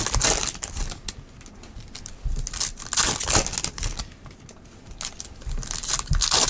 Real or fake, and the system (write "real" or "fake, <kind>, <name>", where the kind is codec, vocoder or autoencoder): real